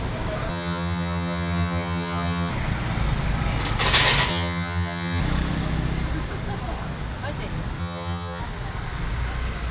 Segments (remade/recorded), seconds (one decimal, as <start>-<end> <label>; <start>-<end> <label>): 0.0-0.5 recorded; 0.5-2.5 remade; 2.5-4.3 recorded; 4.3-5.2 remade; 5.2-7.8 recorded; 7.8-8.4 remade; 8.4-9.7 recorded